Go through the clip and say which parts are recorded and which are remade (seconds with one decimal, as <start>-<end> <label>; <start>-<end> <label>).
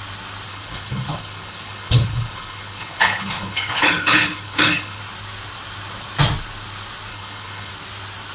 0.0-0.5 recorded; 0.5-5.0 remade; 5.0-7.1 recorded; 7.1-7.7 remade; 7.7-8.3 recorded